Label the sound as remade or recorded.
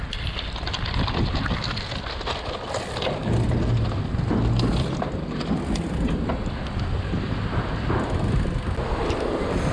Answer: recorded